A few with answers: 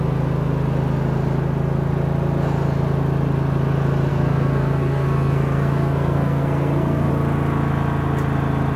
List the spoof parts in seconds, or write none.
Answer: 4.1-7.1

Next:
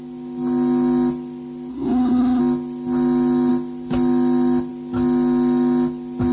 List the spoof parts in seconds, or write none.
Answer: 1.7-2.4